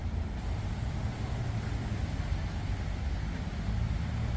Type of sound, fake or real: real